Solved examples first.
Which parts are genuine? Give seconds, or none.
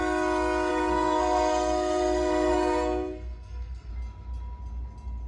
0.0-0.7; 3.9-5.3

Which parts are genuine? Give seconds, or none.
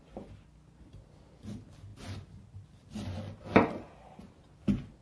0.0-5.0